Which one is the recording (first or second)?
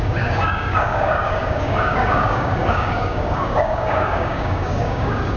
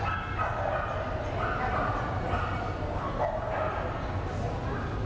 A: second